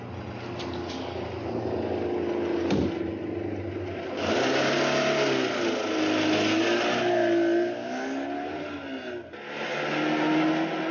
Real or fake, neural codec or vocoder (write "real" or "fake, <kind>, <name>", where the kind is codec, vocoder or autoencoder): real